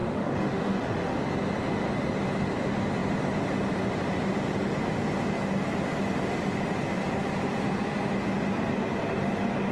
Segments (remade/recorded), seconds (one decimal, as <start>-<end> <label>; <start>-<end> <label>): 0.0-1.2 remade; 1.2-9.7 recorded